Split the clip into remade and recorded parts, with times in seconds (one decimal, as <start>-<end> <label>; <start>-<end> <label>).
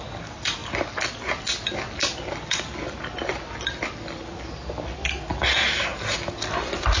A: 0.0-0.6 recorded; 0.6-2.5 remade; 2.5-7.0 recorded